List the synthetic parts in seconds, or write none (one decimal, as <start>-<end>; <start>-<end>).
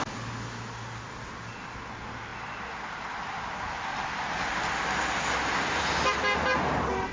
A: none